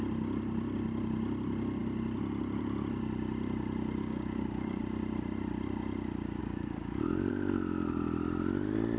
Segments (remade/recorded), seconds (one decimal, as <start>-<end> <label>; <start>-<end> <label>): 0.0-4.0 recorded; 4.0-4.8 remade; 4.8-6.4 recorded; 6.4-7.3 remade; 7.3-9.0 recorded